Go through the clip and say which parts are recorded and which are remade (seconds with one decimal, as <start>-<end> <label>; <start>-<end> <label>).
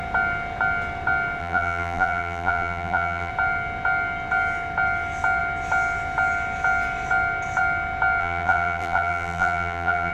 0.0-1.4 recorded; 1.4-3.3 remade; 3.3-8.2 recorded; 8.2-10.1 remade